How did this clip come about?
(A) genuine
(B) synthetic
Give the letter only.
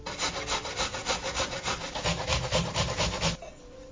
A